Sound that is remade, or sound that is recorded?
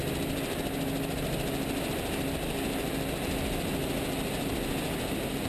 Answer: recorded